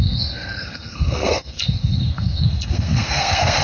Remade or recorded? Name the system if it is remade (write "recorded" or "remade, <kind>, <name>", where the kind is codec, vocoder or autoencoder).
remade, codec, SNAC